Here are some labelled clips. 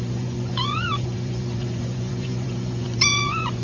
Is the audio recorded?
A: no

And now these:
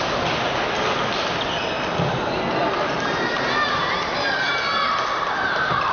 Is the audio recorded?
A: yes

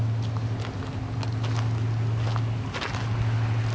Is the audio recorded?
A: yes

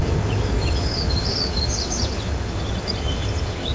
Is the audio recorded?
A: no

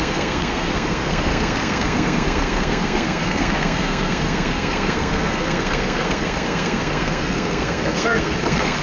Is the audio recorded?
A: no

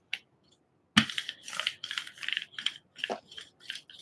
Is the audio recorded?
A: yes